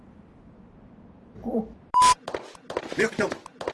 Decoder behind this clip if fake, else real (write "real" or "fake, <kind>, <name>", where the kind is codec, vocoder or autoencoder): real